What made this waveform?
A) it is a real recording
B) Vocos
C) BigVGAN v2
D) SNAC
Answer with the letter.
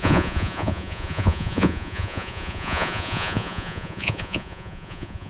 B